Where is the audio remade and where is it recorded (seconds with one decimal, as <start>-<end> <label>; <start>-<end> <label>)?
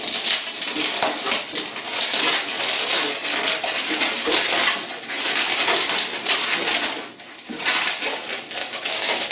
0.0-8.6 recorded; 8.6-9.3 remade